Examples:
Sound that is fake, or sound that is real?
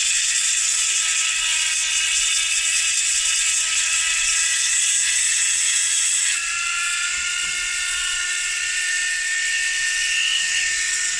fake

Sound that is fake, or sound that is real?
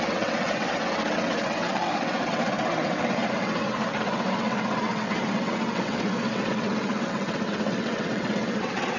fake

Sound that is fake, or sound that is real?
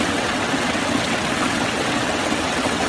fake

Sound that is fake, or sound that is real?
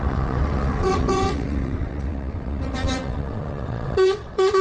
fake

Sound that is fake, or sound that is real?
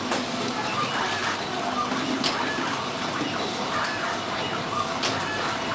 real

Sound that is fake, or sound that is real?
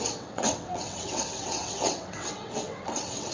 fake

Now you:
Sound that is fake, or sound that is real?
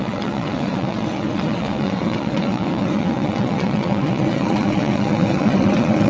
fake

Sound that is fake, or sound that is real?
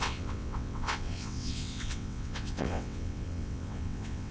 fake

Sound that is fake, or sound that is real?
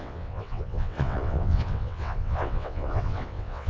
fake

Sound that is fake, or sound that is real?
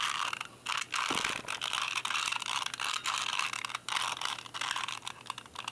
real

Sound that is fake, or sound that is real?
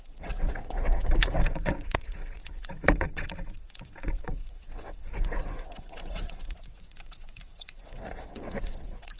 fake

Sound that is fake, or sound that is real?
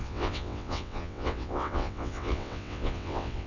fake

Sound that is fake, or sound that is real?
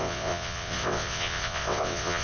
fake